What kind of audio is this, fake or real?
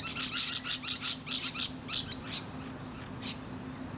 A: real